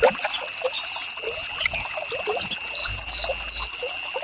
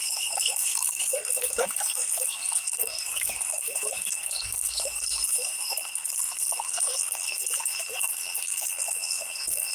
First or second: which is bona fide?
first